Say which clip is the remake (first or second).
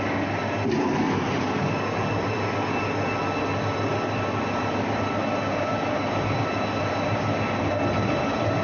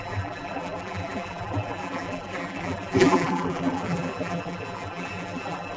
second